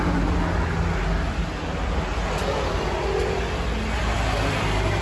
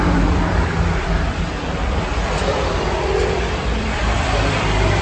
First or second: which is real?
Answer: first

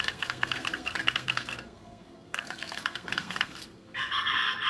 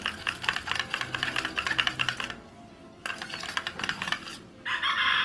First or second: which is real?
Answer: second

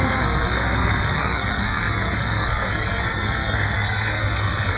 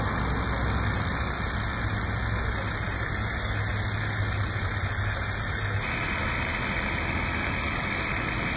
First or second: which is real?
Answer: second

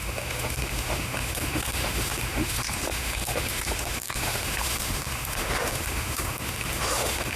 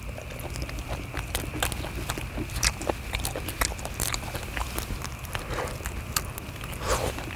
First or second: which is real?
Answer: second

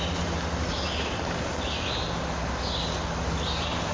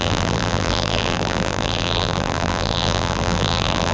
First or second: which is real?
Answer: first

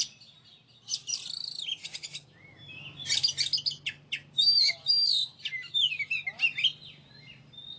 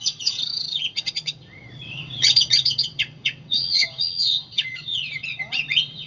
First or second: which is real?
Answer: first